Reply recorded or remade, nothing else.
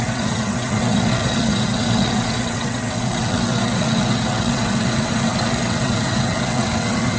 remade